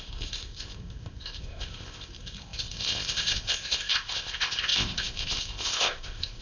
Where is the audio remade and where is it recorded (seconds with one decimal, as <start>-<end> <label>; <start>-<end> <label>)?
0.0-6.4 remade